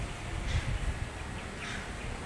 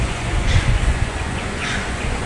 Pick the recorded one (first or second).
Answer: first